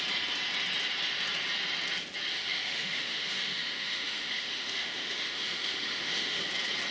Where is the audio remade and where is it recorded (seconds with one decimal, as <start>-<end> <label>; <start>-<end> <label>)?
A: 0.0-2.3 recorded; 2.3-6.4 remade; 6.4-6.9 recorded